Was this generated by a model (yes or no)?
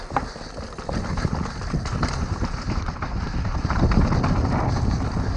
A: no